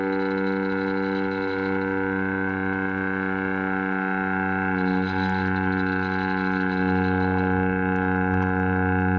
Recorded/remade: recorded